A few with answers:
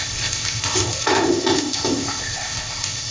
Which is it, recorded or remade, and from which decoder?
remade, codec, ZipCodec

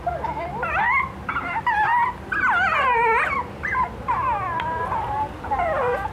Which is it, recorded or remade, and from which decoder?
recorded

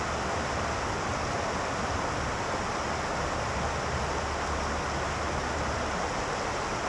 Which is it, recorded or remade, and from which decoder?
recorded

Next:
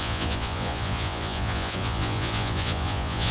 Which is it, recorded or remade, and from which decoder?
remade, vocoder, Vocos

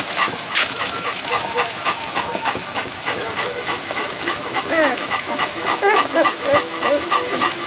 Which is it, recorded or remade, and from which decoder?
remade, autoencoder, DAC-VAE